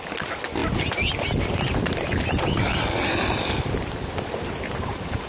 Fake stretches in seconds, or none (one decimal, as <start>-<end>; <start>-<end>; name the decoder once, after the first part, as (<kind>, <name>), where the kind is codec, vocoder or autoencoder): none